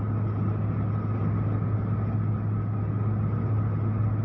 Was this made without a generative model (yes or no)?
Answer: yes